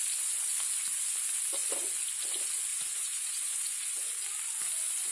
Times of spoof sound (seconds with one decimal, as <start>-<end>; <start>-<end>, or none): 2.7-4.1